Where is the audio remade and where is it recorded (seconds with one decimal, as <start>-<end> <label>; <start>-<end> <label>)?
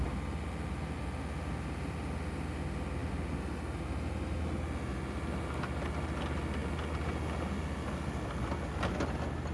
0.0-9.5 recorded